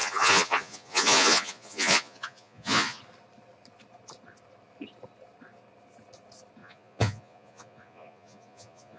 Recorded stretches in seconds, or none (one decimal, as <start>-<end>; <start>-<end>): 3.0-6.6